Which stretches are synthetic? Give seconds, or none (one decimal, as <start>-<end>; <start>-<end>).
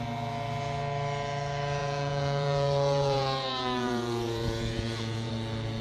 1.8-5.3